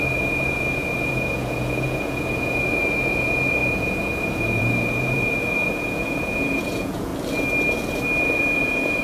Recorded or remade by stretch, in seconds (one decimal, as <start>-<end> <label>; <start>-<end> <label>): 0.0-7.1 remade; 7.1-8.2 recorded; 8.2-9.0 remade